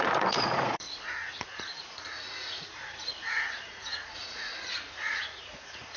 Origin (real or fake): fake